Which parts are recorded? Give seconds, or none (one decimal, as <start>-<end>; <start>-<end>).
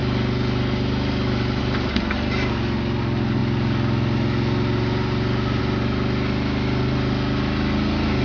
0.0-8.2